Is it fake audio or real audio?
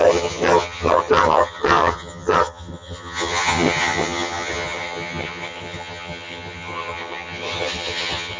fake